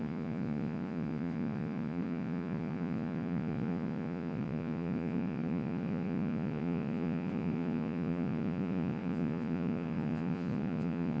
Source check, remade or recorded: remade